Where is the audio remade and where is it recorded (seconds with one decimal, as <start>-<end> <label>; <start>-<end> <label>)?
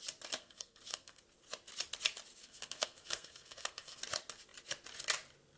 0.0-0.4 recorded; 0.4-1.2 remade; 1.2-2.4 recorded; 2.4-4.0 remade; 4.0-5.6 recorded